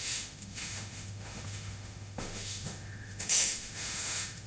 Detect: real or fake fake